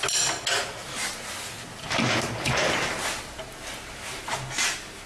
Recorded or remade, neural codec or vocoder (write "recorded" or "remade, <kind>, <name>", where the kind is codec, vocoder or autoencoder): recorded